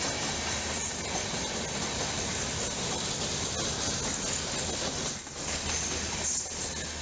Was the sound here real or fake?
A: real